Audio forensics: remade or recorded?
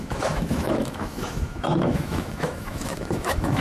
remade